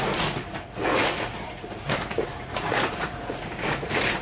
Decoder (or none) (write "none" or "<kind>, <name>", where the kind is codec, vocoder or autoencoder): vocoder, Vocos